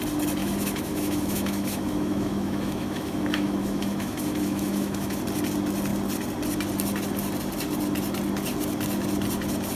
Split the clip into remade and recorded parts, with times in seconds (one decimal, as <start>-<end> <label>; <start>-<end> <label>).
0.0-0.4 recorded; 0.4-5.2 remade; 5.2-9.7 recorded